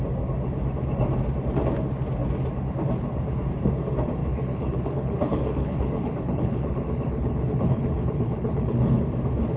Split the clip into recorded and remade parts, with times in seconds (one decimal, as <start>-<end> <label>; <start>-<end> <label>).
0.0-4.2 recorded; 4.2-9.0 remade; 9.0-9.6 recorded